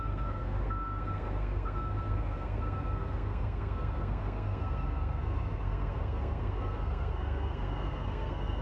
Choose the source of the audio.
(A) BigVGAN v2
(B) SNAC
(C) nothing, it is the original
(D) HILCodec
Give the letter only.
B